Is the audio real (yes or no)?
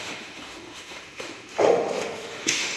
no